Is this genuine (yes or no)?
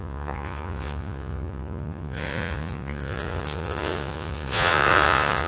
no